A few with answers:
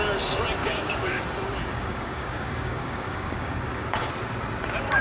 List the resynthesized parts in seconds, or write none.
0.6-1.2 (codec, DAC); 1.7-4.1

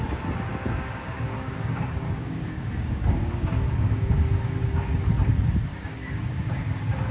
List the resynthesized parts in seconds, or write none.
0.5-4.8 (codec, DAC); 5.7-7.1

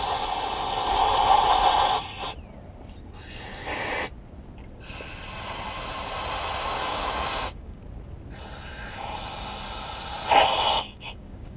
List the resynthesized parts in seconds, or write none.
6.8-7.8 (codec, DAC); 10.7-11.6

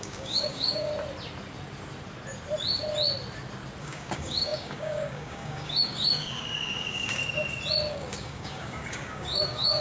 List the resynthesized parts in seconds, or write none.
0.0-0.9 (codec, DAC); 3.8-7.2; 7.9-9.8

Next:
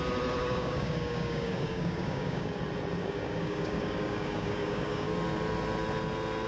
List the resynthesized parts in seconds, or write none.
0.4-2.5 (codec, DAC); 3.0-5.1

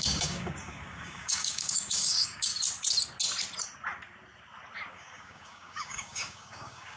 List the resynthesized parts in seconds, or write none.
0.0-2.5 (codec, DAC); 4.9-7.0